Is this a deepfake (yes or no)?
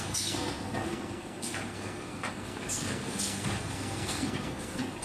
yes